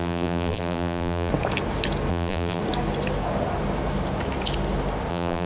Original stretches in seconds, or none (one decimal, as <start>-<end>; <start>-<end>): 1.3-2.1; 2.6-5.1